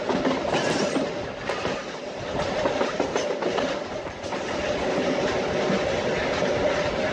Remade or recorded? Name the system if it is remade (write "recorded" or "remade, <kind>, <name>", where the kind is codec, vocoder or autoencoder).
recorded